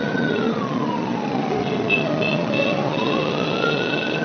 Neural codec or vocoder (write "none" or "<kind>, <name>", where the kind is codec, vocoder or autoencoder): vocoder, Vocos